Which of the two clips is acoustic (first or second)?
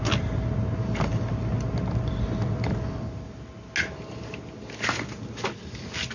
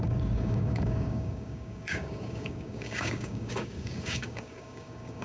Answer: first